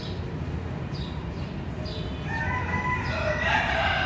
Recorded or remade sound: remade